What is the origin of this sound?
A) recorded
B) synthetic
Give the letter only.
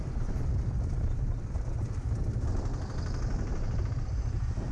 A